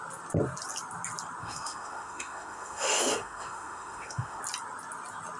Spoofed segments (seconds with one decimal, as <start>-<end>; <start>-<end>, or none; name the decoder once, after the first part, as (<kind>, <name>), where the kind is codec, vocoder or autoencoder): 1.4-4.4 (autoencoder, DAC-VAE)